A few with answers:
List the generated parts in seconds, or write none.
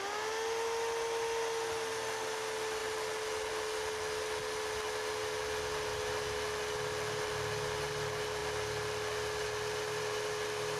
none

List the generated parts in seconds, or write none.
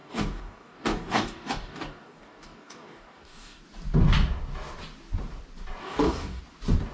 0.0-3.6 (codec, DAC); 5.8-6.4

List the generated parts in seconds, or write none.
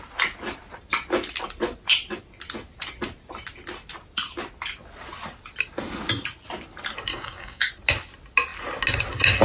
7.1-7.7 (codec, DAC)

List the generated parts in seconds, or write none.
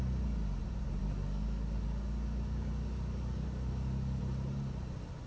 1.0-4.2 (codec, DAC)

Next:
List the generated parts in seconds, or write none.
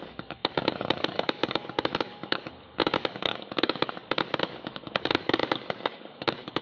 0.0-6.6 (codec, DAC)